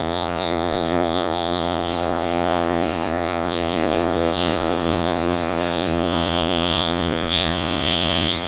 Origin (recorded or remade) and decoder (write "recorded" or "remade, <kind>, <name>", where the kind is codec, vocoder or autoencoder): remade, vocoder, Vocos